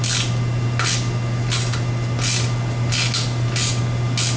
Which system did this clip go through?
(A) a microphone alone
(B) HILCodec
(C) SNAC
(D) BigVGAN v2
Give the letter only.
A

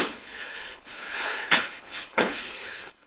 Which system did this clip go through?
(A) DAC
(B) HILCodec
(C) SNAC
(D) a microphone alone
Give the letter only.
B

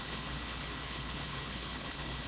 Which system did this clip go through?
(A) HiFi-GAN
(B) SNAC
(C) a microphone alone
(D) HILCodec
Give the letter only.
D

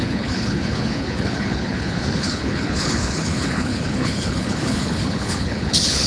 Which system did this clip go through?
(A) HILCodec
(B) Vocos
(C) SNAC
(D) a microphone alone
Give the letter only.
A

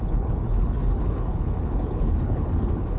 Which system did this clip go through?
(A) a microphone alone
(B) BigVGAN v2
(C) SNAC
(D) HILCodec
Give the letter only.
D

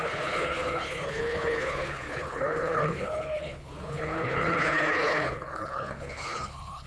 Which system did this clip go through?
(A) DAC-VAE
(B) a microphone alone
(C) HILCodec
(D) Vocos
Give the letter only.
C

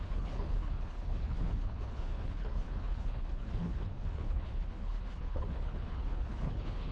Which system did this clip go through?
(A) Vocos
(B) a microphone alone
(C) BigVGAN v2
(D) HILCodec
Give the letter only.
D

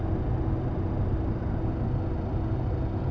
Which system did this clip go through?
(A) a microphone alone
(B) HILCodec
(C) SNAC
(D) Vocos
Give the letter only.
A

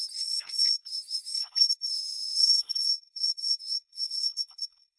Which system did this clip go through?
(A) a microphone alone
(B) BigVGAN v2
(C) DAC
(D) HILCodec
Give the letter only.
D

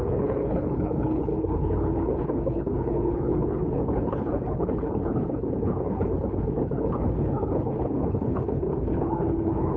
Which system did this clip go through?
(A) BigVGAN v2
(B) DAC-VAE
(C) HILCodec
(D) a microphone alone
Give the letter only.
C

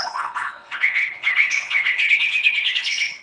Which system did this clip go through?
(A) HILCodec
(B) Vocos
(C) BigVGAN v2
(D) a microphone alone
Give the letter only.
A